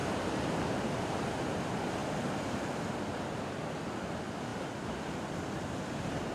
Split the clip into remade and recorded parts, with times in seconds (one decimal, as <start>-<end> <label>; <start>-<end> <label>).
0.0-1.1 remade; 1.1-4.5 recorded; 4.5-5.1 remade; 5.1-6.3 recorded